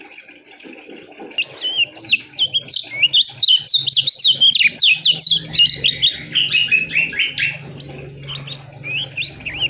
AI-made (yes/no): no